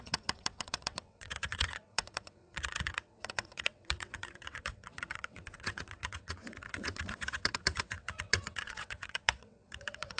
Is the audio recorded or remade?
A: remade